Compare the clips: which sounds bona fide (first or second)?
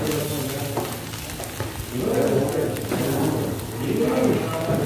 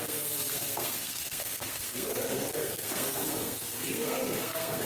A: first